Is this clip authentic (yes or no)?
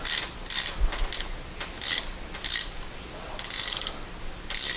yes